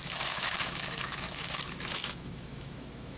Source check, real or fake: fake